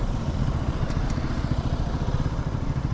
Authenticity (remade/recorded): remade